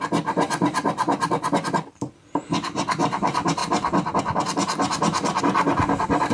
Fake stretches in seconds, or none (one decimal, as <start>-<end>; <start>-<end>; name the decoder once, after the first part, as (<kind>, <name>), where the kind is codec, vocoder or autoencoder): none